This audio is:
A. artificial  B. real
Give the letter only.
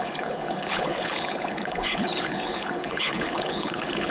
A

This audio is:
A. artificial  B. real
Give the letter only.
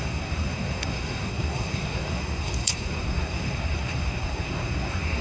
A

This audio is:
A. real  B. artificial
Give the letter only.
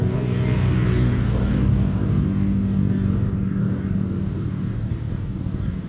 B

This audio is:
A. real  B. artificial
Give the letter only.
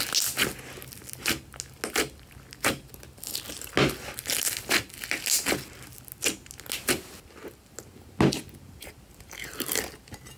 A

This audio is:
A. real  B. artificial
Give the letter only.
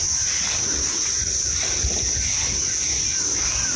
A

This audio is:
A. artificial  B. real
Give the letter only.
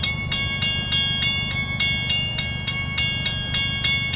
B